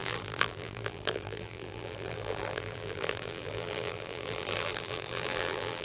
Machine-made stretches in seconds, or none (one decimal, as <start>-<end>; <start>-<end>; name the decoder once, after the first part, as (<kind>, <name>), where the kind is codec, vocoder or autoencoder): 0.0-5.8 (vocoder, BigVGAN v2)